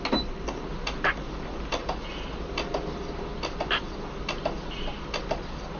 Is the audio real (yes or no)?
yes